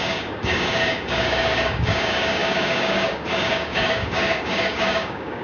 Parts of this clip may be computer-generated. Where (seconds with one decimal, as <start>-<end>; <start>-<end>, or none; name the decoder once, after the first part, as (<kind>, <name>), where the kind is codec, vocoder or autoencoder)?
0.0-5.4 (codec, DAC)

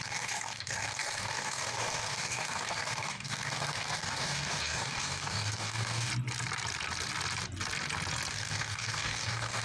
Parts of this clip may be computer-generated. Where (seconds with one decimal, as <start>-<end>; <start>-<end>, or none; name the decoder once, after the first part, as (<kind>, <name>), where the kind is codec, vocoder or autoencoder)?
0.0-6.1 (codec, DAC); 8.3-9.6

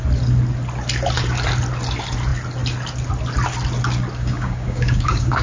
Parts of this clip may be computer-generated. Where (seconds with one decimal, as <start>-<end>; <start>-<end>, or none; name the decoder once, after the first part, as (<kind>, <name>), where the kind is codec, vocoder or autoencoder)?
4.2-5.4 (codec, DAC)

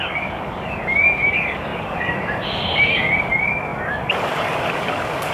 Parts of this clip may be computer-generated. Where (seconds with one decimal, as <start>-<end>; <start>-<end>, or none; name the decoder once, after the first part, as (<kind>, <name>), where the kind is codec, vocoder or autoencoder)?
0.0-5.3 (codec, DAC)

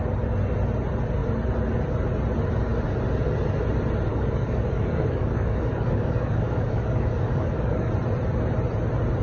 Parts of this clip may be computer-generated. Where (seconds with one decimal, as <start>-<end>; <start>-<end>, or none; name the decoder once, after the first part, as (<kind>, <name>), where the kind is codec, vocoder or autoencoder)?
4.1-7.9 (codec, DAC)

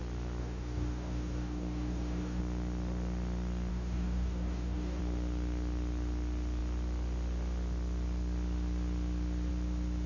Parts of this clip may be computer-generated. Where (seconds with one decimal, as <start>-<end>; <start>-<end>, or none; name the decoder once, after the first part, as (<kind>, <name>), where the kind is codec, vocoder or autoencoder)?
0.4-2.4 (codec, DAC); 3.7-5.0